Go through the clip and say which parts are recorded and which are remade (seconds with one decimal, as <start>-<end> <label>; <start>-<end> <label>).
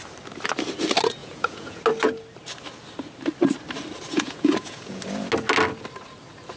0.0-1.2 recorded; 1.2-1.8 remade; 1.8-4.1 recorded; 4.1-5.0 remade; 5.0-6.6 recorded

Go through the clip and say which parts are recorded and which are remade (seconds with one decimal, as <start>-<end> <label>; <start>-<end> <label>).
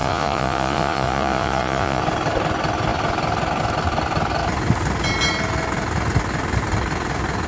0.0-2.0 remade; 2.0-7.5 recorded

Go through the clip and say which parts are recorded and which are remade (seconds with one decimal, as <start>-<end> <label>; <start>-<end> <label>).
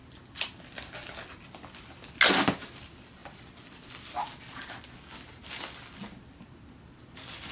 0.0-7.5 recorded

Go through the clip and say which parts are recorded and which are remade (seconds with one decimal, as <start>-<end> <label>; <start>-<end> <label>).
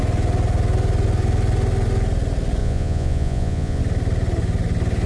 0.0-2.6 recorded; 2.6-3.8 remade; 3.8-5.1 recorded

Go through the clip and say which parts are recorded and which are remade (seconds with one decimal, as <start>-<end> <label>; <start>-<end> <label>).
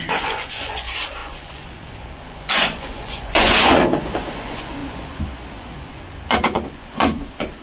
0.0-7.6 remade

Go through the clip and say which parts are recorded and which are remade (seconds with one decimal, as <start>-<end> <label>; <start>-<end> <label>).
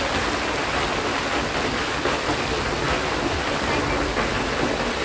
0.0-5.0 recorded